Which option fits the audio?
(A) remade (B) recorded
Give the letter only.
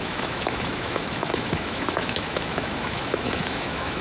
A